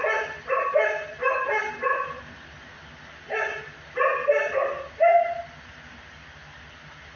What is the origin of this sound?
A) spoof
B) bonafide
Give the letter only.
B